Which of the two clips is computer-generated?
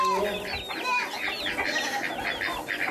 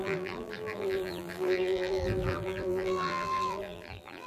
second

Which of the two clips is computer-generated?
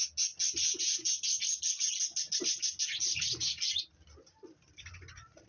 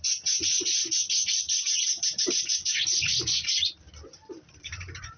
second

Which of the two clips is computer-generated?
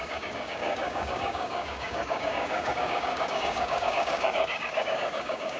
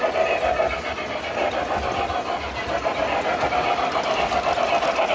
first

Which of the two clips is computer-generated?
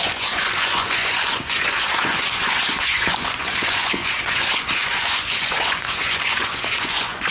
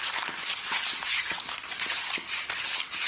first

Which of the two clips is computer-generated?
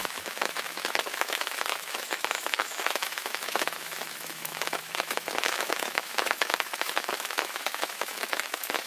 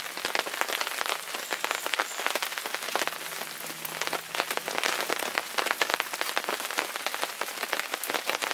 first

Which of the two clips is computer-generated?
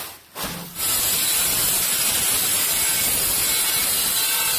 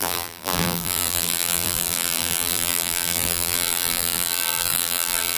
second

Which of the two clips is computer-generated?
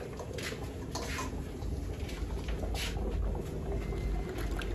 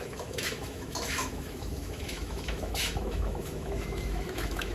second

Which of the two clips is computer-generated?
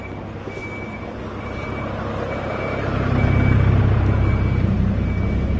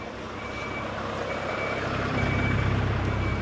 second